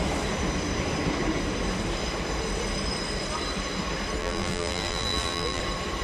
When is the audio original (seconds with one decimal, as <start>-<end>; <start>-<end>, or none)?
0.0-4.2; 5.6-6.0

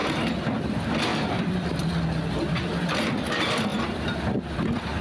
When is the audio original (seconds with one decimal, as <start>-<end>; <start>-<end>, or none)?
0.6-1.1; 3.3-3.7

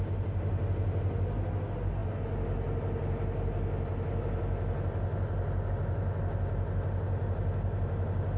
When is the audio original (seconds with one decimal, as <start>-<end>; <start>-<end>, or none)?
0.0-8.4

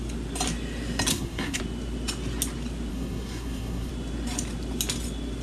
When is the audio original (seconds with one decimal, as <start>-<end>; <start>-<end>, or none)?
0.0-1.1; 1.6-2.9; 3.9-5.4

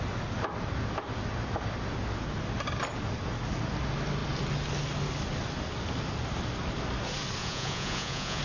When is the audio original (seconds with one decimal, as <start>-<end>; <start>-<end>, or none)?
0.0-7.4

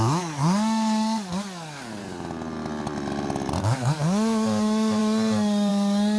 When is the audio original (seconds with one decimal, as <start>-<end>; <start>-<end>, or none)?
2.0-3.6

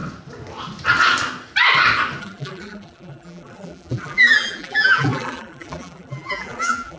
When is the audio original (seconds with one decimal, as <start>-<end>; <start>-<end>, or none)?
0.0-2.2

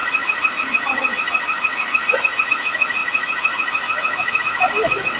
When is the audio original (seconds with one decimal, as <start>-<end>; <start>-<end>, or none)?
2.5-5.2